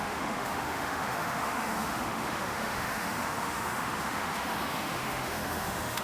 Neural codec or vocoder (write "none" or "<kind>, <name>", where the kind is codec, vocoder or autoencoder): autoencoder, DAC-VAE